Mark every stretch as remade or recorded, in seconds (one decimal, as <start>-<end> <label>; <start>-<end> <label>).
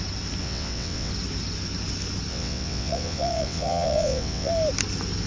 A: 0.0-0.4 recorded; 0.4-1.1 remade; 1.1-2.3 recorded; 2.3-4.5 remade; 4.5-5.3 recorded